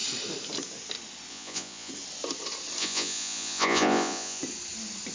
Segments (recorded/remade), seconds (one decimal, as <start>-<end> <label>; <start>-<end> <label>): 0.0-1.3 recorded; 1.3-1.9 remade; 1.9-2.8 recorded; 2.8-4.4 remade; 4.4-5.1 recorded

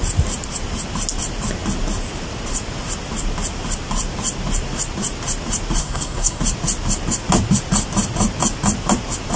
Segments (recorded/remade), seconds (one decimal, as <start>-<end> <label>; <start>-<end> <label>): 0.0-5.8 recorded; 5.8-6.4 remade; 6.4-9.4 recorded

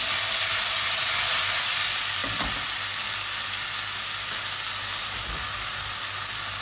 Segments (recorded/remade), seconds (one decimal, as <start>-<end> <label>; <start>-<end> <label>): 0.0-6.6 recorded

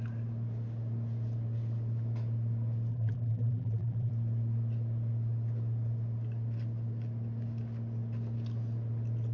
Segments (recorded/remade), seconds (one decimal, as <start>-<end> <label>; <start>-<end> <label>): 0.0-2.9 recorded; 2.9-4.1 remade; 4.1-9.3 recorded

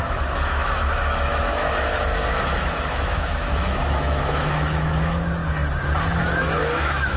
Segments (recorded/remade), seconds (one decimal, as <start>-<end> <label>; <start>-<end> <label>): 0.0-5.4 remade; 5.4-6.2 recorded; 6.2-7.2 remade